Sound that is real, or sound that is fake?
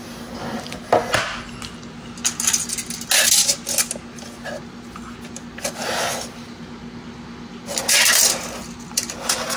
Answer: real